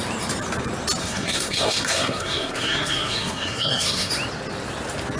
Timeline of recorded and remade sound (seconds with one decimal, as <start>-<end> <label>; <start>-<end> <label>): 0.0-1.0 recorded; 1.0-4.1 remade; 4.1-5.2 recorded